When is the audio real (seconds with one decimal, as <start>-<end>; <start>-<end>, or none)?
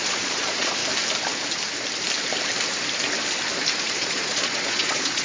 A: 0.8-3.9